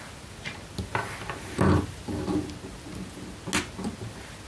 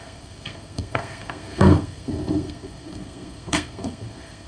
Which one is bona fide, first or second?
first